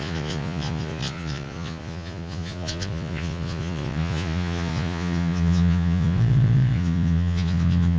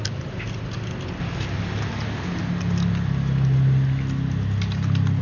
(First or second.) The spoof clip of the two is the first